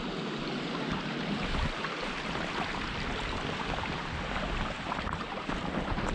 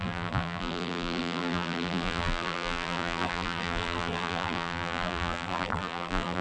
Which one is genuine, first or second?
first